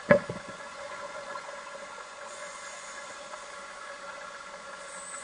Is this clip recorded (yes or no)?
no